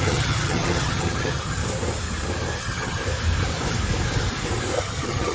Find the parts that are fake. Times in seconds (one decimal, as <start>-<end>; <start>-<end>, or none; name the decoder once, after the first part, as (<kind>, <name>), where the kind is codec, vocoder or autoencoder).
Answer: 0.0-1.6 (vocoder, HiFi-GAN); 2.6-3.0; 4.8-5.3